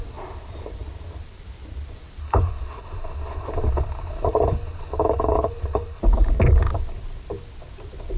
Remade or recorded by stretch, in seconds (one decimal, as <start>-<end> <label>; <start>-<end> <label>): 0.0-2.2 recorded; 2.2-6.0 remade; 6.0-8.2 recorded